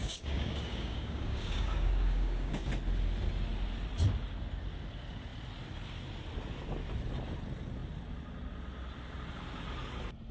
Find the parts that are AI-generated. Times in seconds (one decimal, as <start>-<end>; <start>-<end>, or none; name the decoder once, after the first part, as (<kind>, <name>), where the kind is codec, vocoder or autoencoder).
0.0-2.7 (codec, DAC)